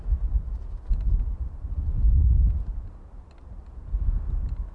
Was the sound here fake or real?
real